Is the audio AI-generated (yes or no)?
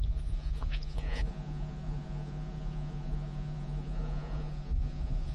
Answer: yes